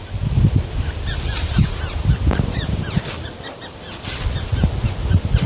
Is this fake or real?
real